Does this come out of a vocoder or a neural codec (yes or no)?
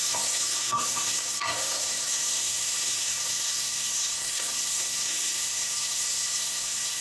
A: yes